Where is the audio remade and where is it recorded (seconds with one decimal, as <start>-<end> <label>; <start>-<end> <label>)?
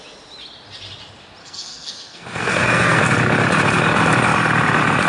0.0-1.4 recorded; 1.4-3.0 remade; 3.0-5.1 recorded